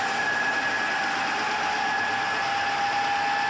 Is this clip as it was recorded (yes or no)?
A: yes